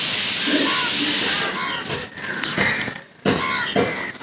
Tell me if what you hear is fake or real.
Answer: real